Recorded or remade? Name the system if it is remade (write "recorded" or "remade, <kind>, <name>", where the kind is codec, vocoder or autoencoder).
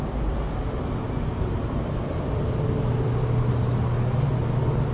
recorded